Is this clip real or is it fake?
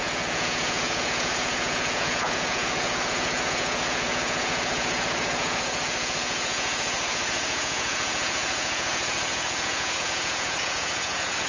fake